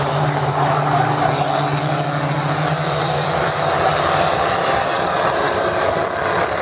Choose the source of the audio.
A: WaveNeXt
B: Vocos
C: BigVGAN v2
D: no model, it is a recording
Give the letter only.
D